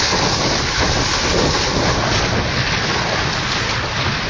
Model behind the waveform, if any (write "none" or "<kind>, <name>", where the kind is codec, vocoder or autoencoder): none